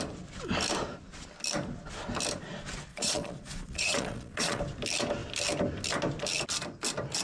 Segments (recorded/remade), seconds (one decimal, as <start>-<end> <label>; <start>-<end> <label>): 0.0-2.9 recorded; 2.9-4.6 remade; 4.6-7.2 recorded